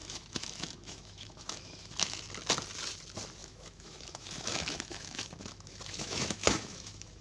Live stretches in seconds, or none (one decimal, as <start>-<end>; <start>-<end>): 2.2-3.4